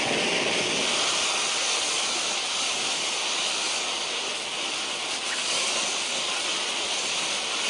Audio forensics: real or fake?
real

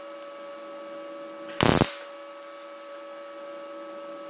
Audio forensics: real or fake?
real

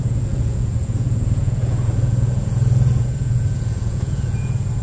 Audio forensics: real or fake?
fake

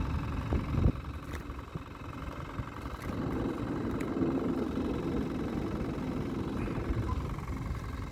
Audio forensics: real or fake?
real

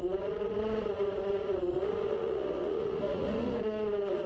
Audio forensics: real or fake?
fake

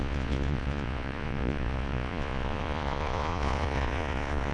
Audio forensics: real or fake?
fake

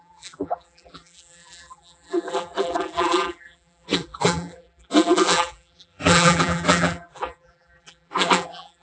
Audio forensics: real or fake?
fake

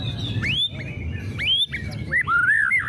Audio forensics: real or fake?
real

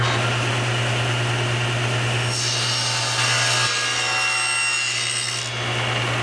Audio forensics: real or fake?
real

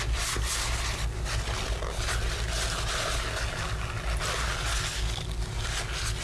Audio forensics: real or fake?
real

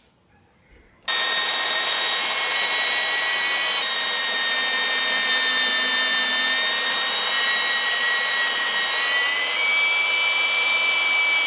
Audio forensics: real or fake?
real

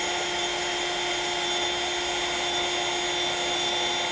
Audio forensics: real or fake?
real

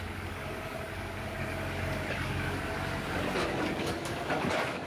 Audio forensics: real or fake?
fake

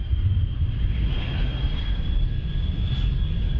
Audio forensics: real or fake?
real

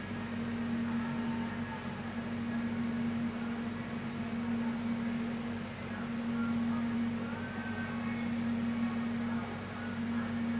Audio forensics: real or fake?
real